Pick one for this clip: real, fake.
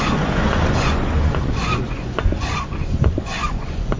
fake